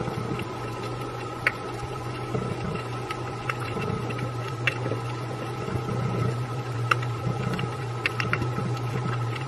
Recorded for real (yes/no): no